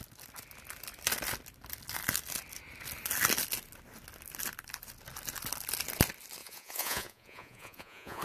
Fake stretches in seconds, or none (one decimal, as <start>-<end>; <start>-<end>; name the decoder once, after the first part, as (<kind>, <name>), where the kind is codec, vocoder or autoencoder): 6.4-8.2 (vocoder, Vocos)